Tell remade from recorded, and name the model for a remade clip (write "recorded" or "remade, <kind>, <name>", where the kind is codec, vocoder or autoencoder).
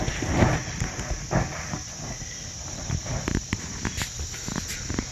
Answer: recorded